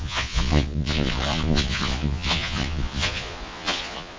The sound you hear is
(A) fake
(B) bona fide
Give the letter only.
A